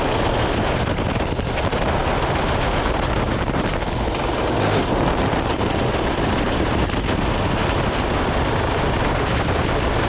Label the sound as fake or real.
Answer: real